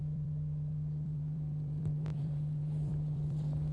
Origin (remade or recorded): remade